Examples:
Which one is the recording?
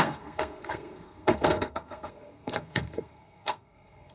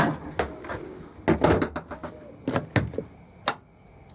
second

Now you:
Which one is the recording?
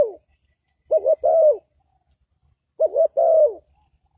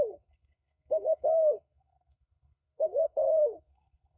first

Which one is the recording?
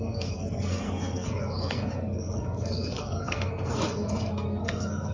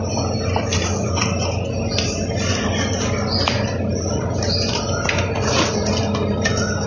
second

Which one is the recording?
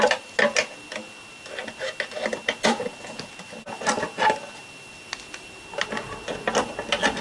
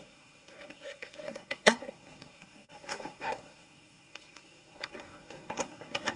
first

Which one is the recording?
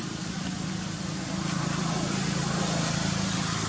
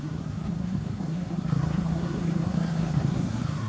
first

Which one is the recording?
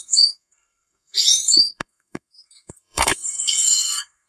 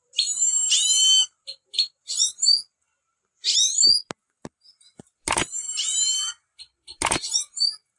second